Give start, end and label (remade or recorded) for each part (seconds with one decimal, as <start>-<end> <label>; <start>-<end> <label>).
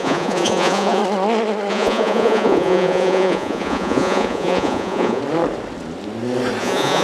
0.0-1.0 remade; 1.0-1.7 recorded; 1.7-5.2 remade; 5.2-6.6 recorded; 6.6-7.0 remade